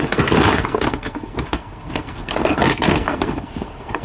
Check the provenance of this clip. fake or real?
fake